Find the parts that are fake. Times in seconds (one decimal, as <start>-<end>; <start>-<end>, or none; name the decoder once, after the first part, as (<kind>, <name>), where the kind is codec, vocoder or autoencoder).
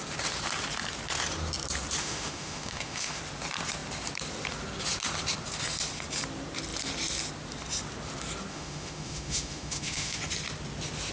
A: 2.0-3.2 (autoencoder, DAC-VAE); 8.5-10.2